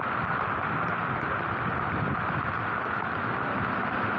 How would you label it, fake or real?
real